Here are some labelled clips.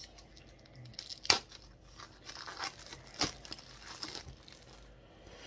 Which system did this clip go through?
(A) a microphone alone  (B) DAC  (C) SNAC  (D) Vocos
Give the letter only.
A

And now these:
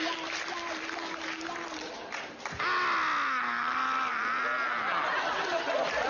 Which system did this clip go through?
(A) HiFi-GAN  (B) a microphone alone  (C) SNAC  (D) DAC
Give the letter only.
B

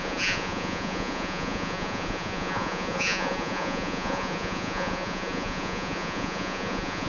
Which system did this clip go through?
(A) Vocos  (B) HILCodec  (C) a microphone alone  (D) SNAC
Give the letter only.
A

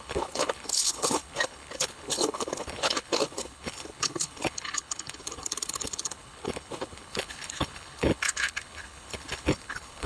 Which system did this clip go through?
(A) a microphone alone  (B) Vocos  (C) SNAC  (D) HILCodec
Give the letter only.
D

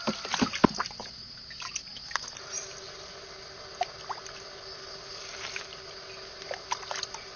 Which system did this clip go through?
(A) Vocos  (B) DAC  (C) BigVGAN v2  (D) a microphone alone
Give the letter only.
D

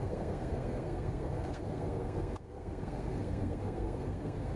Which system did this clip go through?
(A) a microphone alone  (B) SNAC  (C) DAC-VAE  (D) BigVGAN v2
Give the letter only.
B